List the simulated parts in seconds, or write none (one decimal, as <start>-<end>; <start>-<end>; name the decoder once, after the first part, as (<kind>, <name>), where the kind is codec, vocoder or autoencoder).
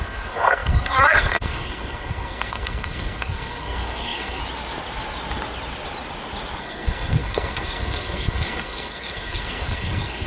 0.0-4.4 (codec, SNAC); 6.6-10.3